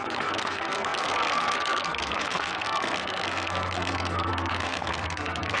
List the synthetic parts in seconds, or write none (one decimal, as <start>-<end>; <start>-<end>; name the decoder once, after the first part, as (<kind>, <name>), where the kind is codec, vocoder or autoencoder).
0.0-5.6 (codec, SNAC)